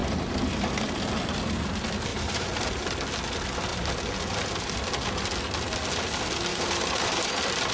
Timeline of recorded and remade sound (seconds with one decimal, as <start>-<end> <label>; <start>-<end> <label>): 0.0-0.7 remade; 0.7-2.1 recorded; 2.1-2.8 remade; 2.8-6.5 recorded; 6.5-7.3 remade; 7.3-7.7 recorded